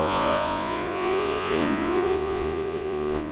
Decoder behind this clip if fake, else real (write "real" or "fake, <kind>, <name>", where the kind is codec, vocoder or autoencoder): fake, vocoder, Vocos